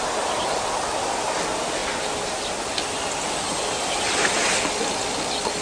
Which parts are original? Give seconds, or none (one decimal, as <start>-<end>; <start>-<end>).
0.0-5.6